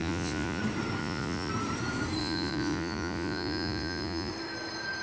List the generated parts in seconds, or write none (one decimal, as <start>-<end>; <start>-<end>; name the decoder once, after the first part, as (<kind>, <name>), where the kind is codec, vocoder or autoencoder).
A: 0.0-0.6 (vocoder, Vocos); 1.0-1.5; 2.2-4.3